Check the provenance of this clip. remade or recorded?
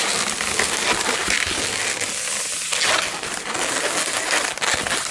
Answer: recorded